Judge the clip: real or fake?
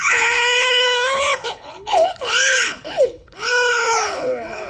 fake